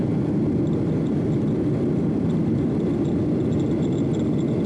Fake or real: real